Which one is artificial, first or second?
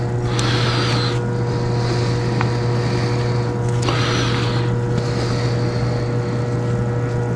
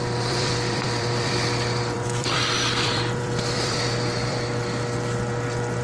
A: second